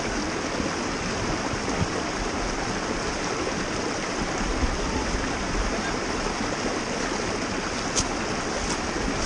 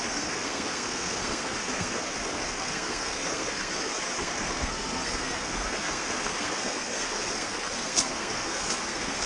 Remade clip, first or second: second